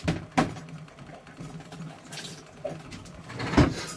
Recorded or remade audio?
recorded